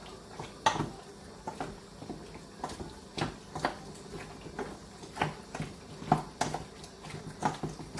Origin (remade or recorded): recorded